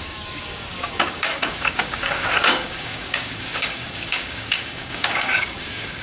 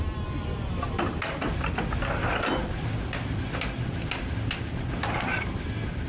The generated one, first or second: first